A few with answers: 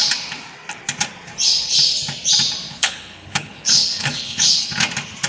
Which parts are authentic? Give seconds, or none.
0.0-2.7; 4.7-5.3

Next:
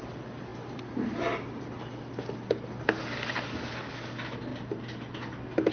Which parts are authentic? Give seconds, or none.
0.0-5.7

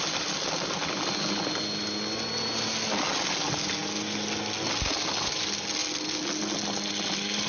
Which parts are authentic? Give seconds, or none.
0.0-7.5

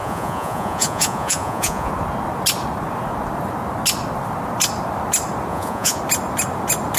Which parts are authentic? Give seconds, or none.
1.9-5.5; 6.0-7.0